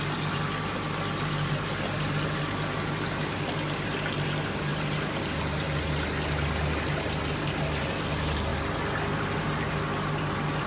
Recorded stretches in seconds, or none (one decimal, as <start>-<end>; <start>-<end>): 0.0-10.7